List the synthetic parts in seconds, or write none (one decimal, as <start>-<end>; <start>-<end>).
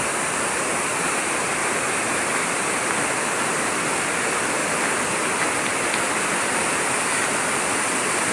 none